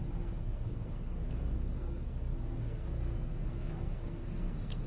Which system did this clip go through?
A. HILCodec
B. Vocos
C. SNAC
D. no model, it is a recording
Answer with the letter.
C